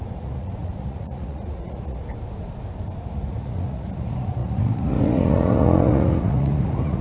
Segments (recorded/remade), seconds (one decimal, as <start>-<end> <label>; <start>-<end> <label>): 0.0-2.0 remade; 2.0-3.1 recorded; 3.1-7.0 remade